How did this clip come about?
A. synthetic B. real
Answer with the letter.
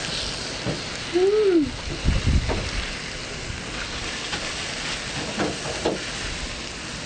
B